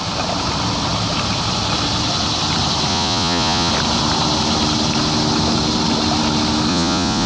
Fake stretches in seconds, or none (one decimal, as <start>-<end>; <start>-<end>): 2.9-3.7; 6.7-7.3